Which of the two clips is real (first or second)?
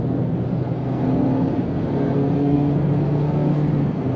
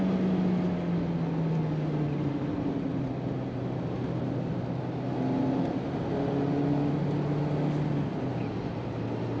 second